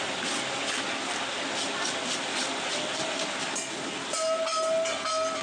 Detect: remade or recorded recorded